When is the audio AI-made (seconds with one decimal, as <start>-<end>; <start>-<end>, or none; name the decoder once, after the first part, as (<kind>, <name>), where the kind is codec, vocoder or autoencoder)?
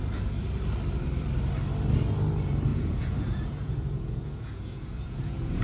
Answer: 2.7-5.6 (vocoder, Vocos)